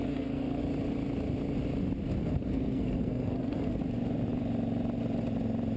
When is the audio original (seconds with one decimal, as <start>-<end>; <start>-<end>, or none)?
0.6-2.2; 3.8-5.8

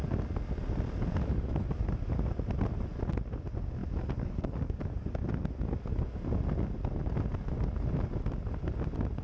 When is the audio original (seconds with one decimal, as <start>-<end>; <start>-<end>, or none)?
0.0-3.8; 5.1-9.2

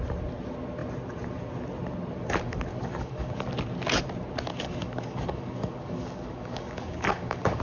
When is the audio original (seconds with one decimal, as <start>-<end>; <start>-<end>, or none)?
0.0-2.7; 3.5-4.5

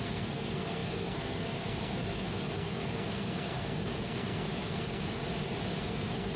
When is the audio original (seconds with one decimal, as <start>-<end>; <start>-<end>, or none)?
5.2-5.8

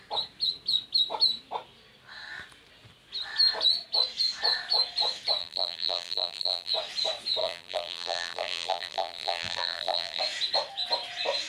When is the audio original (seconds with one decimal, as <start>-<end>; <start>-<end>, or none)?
0.0-5.4; 6.7-7.4; 10.2-11.5